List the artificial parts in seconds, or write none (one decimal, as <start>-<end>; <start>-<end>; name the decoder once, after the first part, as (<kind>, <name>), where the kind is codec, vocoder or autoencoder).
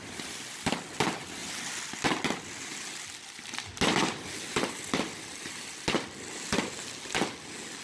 none